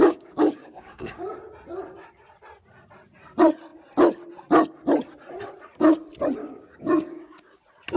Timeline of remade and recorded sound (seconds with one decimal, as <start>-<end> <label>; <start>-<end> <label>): 0.0-1.3 remade; 1.3-6.4 recorded; 6.4-7.6 remade; 7.6-8.0 recorded

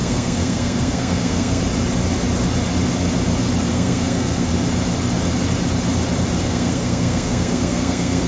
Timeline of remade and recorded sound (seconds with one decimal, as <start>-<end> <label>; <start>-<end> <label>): 0.0-1.6 remade; 1.6-3.7 recorded; 3.7-4.5 remade; 4.5-6.4 recorded; 6.4-8.3 remade

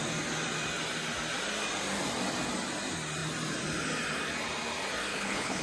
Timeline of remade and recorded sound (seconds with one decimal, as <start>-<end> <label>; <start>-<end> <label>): 0.0-5.1 recorded; 5.1-5.6 remade

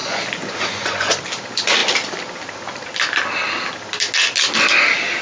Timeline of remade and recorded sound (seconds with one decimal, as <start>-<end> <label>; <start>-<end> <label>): 0.0-1.1 remade; 1.1-5.2 recorded

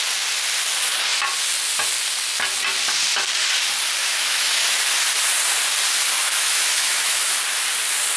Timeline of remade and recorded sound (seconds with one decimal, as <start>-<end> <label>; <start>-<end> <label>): 0.0-4.0 recorded; 4.0-4.8 remade; 4.8-6.2 recorded; 6.2-7.3 remade; 7.3-8.2 recorded